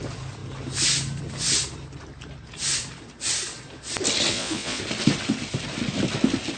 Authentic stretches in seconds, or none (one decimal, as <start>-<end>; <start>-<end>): 0.0-4.3; 4.8-6.6